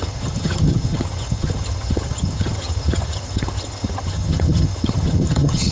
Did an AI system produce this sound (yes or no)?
yes